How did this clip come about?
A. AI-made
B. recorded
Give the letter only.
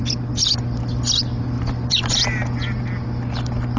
A